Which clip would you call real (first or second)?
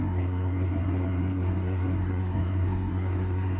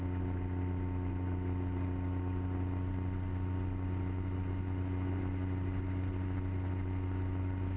second